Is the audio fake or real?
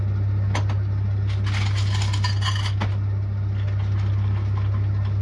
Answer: real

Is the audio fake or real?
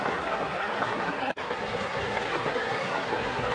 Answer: fake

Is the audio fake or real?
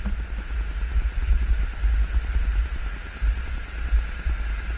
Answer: real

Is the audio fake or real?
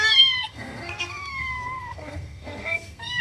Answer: fake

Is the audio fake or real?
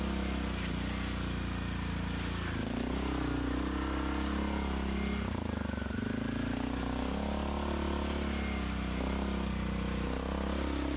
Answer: real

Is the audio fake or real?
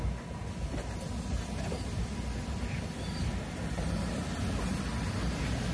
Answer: real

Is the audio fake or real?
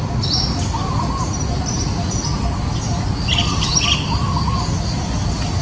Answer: real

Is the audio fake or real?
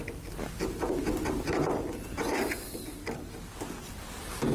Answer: real